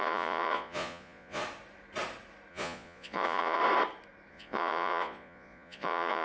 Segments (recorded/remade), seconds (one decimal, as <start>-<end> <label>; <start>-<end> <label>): 0.0-1.4 remade; 1.4-2.5 recorded; 2.5-3.6 remade; 3.6-4.3 recorded; 4.3-6.2 remade